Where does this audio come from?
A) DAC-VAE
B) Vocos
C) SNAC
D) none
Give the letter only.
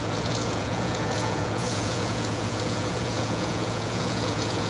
B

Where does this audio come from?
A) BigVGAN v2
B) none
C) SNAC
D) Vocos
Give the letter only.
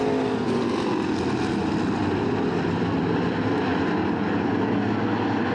B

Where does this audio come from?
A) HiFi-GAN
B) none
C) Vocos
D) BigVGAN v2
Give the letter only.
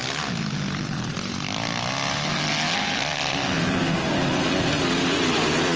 B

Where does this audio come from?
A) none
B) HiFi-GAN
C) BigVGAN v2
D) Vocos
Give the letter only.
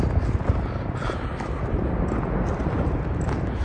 A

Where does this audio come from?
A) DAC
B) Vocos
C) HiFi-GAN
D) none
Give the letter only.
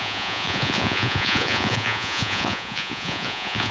B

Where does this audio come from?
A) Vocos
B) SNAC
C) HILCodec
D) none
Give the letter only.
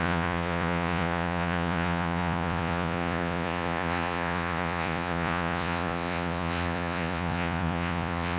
A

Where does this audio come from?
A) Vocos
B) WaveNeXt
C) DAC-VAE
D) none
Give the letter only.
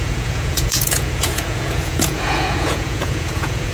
A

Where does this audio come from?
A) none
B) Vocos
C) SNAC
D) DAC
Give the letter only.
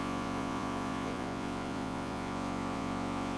B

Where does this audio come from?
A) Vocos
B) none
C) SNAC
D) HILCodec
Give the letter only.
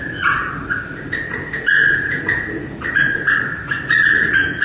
A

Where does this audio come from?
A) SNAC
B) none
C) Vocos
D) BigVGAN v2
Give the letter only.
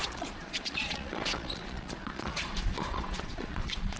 C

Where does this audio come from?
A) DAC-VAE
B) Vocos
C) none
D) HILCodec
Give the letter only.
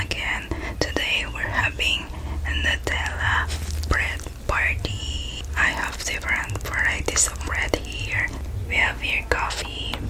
C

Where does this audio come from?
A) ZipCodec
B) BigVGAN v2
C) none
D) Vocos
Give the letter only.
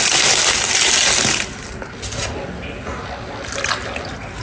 C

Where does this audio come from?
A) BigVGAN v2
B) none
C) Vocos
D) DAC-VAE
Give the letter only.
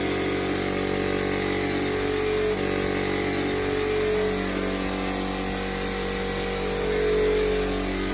B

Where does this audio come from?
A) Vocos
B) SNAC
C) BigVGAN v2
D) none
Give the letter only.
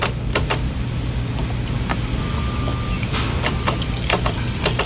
D